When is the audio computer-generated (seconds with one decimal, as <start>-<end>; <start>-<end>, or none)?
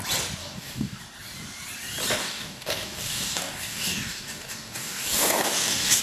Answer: 0.4-1.0; 2.2-6.0